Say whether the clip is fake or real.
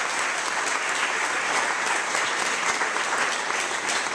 real